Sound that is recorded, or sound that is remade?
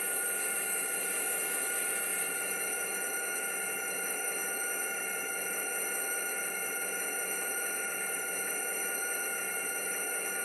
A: remade